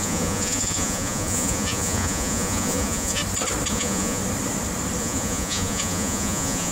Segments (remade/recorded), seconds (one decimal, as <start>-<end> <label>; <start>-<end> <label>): 0.0-3.2 remade; 3.2-3.7 recorded; 3.7-4.2 remade; 4.2-5.0 recorded; 5.0-6.7 remade